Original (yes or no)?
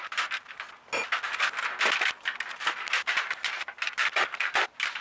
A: yes